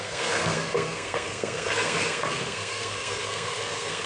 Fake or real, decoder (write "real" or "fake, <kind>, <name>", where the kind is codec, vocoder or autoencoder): fake, codec, SNAC